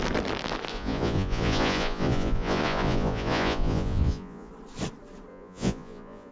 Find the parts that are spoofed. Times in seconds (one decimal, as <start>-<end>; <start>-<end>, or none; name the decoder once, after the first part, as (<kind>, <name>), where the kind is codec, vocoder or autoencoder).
0.7-4.5 (vocoder, Vocos); 5.3-6.3